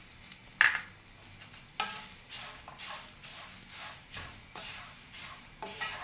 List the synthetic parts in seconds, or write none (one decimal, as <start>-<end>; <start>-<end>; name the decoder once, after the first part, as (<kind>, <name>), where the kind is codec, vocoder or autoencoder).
0.0-0.4 (vocoder, BigVGAN v2); 4.0-6.0